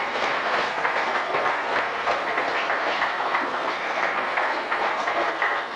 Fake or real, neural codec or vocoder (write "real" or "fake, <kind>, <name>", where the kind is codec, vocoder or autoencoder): fake, codec, SNAC